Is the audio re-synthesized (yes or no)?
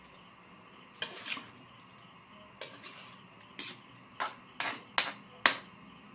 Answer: no